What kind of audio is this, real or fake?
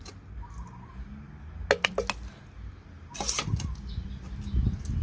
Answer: real